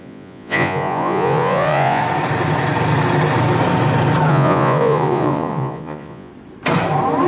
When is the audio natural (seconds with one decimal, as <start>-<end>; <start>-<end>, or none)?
2.0-4.3; 6.3-7.3